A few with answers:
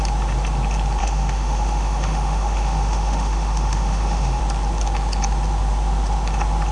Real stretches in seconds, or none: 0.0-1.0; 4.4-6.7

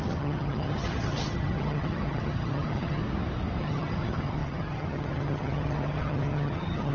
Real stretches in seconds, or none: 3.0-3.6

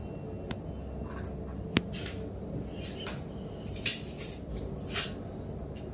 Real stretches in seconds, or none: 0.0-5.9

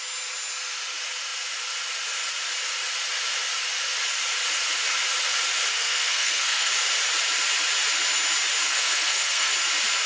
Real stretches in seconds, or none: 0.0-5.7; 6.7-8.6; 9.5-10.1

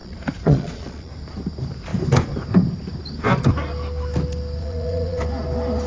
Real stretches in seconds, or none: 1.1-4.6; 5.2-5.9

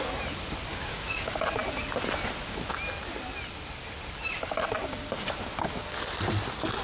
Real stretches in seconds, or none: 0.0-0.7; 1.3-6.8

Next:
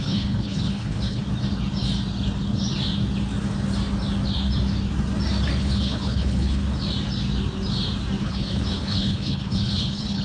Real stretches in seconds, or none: 1.2-5.6; 6.6-8.2